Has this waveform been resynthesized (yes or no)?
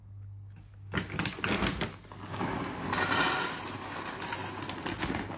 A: no